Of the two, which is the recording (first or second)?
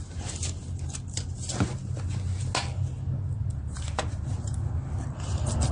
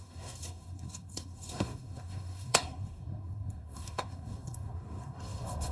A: first